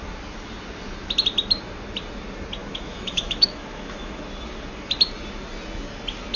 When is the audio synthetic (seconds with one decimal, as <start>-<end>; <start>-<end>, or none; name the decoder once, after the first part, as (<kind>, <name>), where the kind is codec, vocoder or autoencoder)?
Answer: 2.6-4.2 (autoencoder, DAC-VAE)